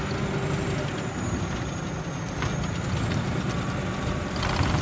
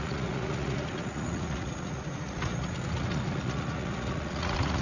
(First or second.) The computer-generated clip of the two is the second